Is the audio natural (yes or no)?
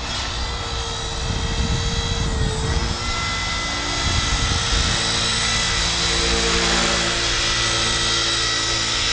yes